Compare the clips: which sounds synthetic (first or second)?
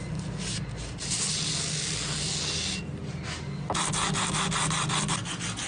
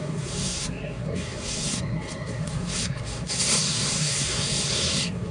second